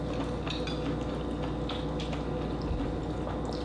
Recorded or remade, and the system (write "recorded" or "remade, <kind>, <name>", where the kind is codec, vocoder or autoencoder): recorded